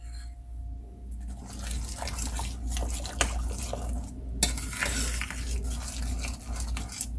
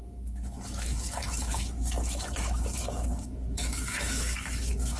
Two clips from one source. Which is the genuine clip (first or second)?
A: first